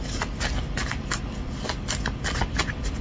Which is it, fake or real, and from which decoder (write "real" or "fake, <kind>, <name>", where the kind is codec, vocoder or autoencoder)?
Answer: real